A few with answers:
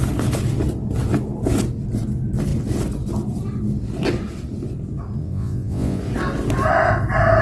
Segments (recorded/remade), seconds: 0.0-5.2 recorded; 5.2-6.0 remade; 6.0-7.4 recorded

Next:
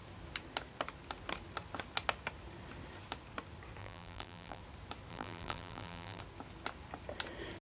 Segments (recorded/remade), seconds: 0.0-3.8 recorded; 3.8-4.6 remade; 4.6-5.1 recorded; 5.1-6.2 remade; 6.2-7.7 recorded

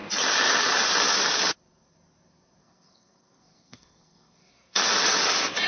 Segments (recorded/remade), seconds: 0.0-2.6 recorded; 2.6-4.8 remade; 4.8-5.7 recorded

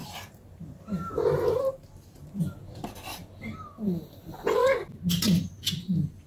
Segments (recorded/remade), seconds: 0.0-1.6 remade; 1.6-6.3 recorded

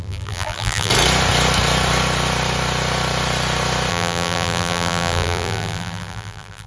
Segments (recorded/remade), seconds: 0.0-0.9 remade; 0.9-3.9 recorded; 3.9-6.7 remade

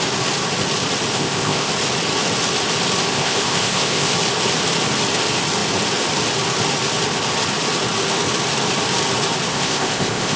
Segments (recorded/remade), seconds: 0.0-1.1 recorded; 1.1-1.7 remade; 1.7-3.1 recorded; 3.1-4.1 remade; 4.1-9.5 recorded; 9.5-10.4 remade